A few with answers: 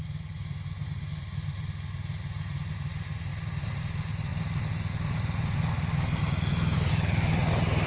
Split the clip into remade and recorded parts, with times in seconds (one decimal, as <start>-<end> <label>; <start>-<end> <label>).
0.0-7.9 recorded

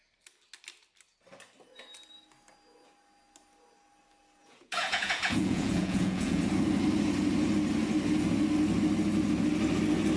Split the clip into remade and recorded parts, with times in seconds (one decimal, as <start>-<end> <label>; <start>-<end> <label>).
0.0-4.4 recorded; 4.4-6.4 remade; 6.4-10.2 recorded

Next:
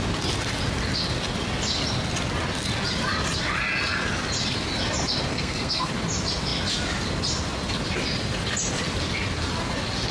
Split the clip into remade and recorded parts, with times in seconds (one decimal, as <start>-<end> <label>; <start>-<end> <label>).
0.0-5.3 recorded; 5.3-5.9 remade; 5.9-10.1 recorded

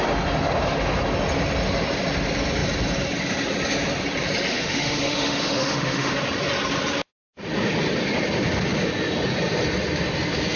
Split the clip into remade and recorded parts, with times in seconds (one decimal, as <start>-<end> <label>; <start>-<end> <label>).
0.0-4.5 recorded; 4.5-6.1 remade; 6.1-10.6 recorded